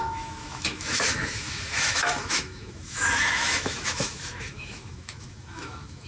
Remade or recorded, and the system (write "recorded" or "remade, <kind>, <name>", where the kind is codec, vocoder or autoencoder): remade, autoencoder, DAC-VAE